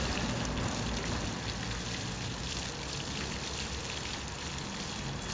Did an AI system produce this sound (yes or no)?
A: no